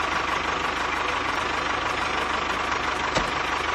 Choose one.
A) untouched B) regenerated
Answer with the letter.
A